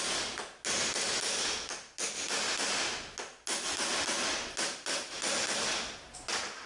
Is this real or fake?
real